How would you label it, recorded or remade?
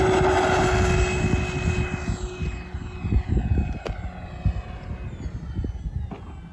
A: recorded